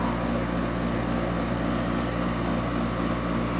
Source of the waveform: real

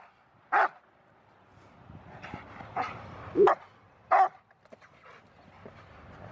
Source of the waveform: real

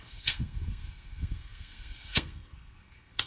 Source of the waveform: fake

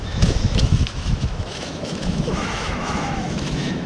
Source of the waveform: fake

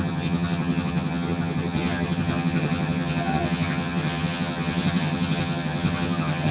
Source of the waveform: fake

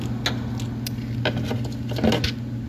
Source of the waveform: real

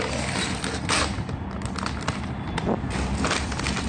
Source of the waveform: real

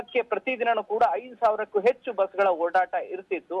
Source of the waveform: real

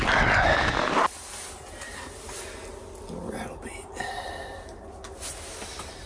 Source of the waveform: real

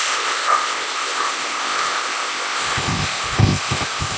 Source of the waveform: fake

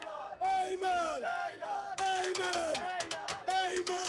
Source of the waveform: fake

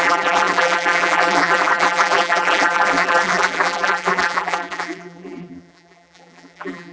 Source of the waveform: fake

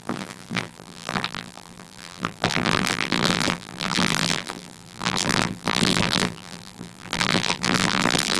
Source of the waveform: fake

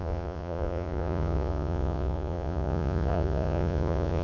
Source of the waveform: fake